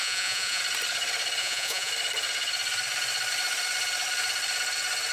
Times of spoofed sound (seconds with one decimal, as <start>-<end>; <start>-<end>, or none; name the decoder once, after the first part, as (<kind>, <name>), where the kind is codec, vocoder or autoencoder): 0.0-0.6 (vocoder, Vocos); 1.4-1.9